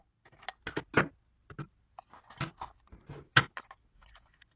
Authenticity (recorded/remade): recorded